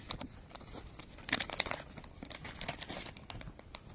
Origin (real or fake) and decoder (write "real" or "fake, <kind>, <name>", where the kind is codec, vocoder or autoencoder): real